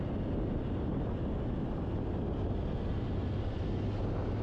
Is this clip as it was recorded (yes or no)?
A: yes